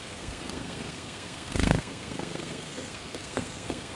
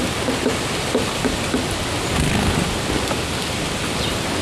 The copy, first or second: first